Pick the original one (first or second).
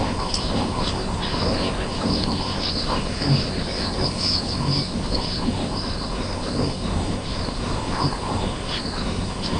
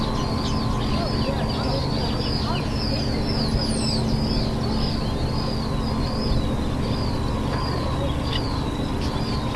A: second